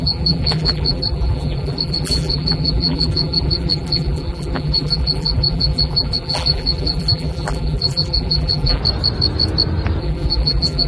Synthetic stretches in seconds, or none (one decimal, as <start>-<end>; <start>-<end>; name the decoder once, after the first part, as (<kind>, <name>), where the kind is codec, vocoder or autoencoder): 0.0-8.8 (vocoder, BigVGAN v2); 10.0-10.9